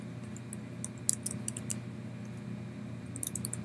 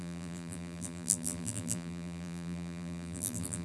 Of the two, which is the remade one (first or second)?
second